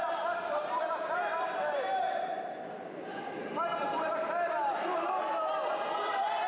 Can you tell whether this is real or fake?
fake